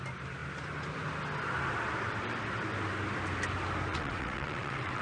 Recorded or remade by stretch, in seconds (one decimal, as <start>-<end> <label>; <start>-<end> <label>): 0.0-3.9 recorded; 3.9-5.0 remade